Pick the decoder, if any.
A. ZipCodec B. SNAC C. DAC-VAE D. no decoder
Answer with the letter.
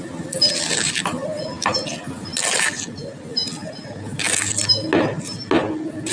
D